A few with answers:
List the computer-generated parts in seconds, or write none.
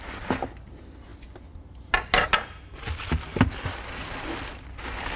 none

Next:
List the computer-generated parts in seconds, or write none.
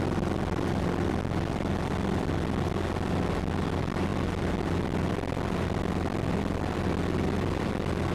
none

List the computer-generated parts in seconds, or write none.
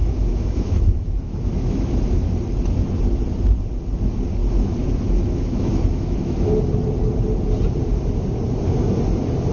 0.0-2.3 (autoencoder, DAC-VAE); 4.4-6.5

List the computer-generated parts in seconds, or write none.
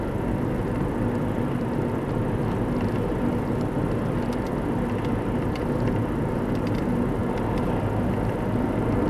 none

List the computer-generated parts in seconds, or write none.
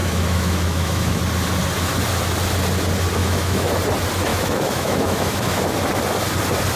0.0-1.2 (autoencoder, DAC-VAE); 3.2-3.8; 4.3-5.6